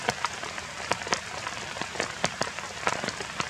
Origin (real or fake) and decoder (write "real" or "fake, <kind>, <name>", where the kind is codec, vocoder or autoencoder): real